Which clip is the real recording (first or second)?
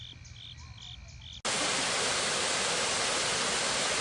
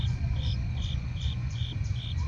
first